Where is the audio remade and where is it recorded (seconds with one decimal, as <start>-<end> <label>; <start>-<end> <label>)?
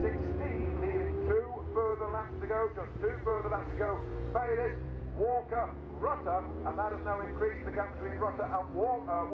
0.0-1.0 remade; 1.0-1.9 recorded; 1.9-2.5 remade; 2.5-3.3 recorded; 3.3-6.7 remade; 6.7-7.6 recorded; 7.6-9.3 remade